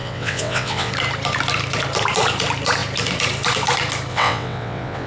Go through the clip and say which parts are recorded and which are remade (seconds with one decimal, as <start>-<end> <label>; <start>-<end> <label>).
0.0-0.9 remade; 0.9-4.1 recorded; 4.1-5.1 remade